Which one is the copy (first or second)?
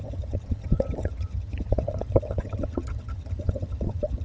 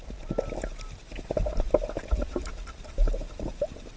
first